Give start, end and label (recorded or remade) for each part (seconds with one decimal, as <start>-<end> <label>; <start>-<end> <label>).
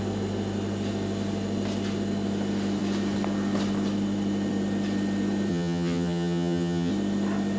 0.0-5.5 recorded; 5.5-6.9 remade; 6.9-7.6 recorded